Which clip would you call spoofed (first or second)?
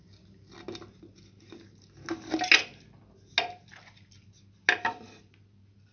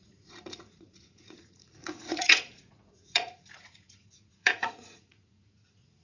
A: second